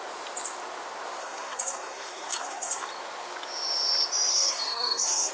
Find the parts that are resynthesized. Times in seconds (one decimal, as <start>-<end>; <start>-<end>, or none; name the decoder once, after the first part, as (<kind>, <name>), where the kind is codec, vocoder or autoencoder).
1.2-2.9 (codec, SNAC); 4.3-5.3